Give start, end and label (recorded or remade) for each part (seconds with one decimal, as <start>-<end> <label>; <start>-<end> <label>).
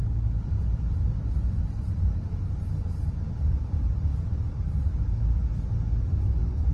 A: 0.0-6.7 remade